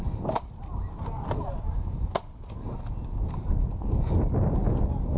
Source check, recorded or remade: recorded